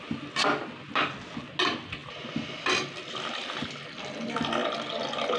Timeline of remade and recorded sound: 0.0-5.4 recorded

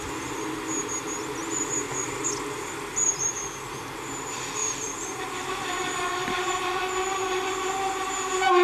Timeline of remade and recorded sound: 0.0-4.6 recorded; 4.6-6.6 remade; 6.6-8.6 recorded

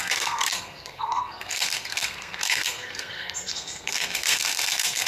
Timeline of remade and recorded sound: 0.0-5.1 remade